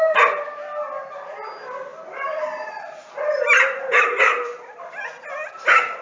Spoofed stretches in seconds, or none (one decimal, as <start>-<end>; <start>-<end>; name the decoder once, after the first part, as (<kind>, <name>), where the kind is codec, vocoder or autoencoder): 1.9-5.2 (vocoder, BigVGAN v2)